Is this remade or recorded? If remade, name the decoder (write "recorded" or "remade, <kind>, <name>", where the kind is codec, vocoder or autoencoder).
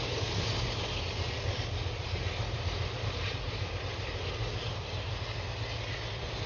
recorded